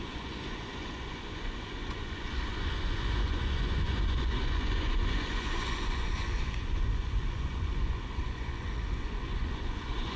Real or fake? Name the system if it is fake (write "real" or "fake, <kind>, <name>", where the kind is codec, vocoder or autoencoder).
fake, vocoder, Vocos